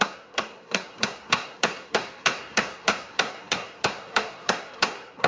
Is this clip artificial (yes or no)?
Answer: yes